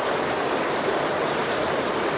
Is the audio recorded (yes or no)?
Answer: yes